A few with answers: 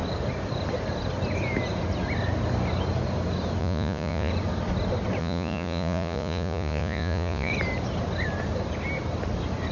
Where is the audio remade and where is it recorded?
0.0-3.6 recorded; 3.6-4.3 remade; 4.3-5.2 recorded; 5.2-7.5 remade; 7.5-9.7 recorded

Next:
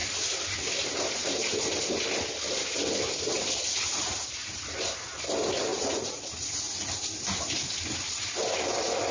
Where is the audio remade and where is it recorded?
0.0-5.7 recorded; 5.7-6.2 remade; 6.2-9.1 recorded

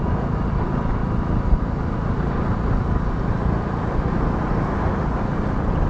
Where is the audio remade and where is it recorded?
0.0-5.9 recorded